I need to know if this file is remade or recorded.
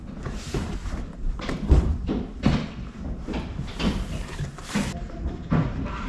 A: recorded